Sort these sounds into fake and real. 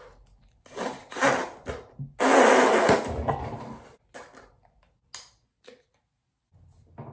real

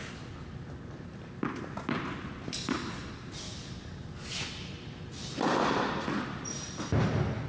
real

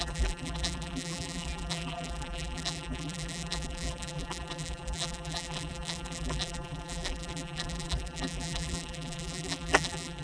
fake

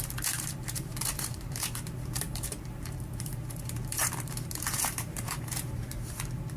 fake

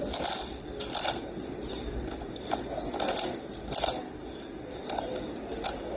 real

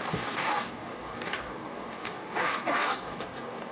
fake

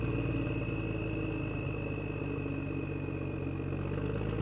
real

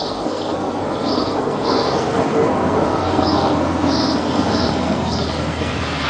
fake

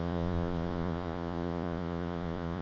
fake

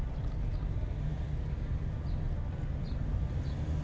real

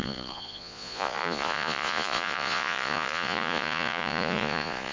fake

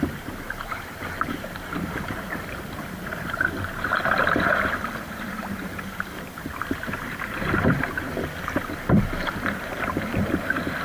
fake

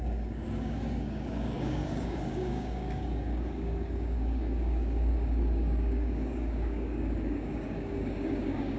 fake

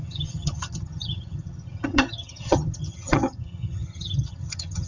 fake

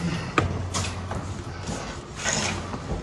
real